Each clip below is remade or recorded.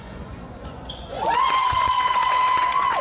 remade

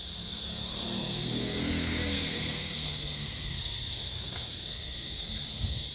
remade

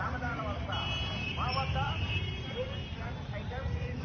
remade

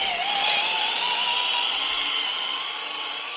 recorded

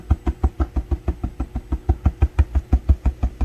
recorded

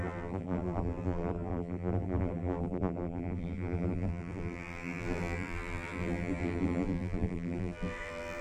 remade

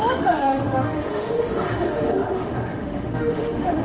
remade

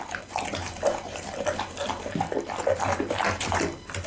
recorded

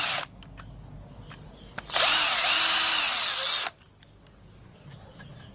recorded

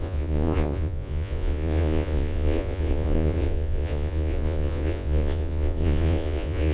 remade